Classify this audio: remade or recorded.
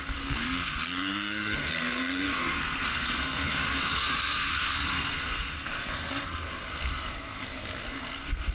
remade